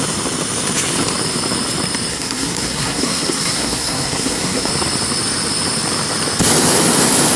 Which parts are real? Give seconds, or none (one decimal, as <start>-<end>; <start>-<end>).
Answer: 0.0-2.1; 4.7-7.4